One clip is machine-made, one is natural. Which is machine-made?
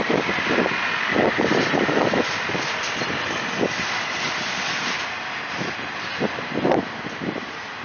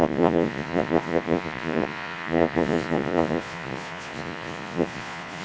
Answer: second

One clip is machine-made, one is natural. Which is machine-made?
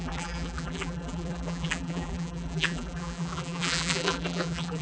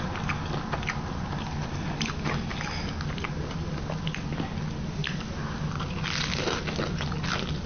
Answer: first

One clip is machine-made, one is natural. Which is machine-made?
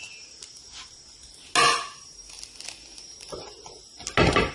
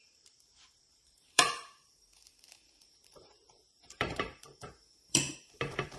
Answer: second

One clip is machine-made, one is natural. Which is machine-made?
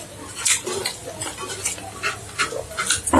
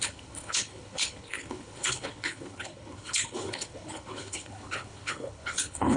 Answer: second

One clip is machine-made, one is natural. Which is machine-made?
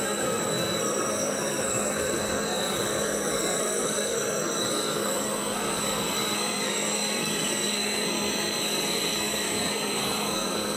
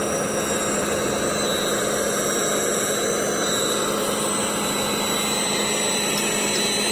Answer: first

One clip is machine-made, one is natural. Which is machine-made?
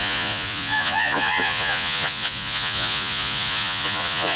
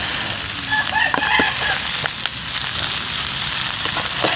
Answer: first